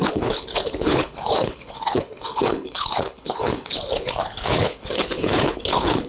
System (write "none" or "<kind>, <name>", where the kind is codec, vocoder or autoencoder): codec, HILCodec